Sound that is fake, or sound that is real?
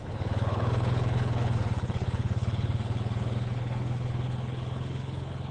fake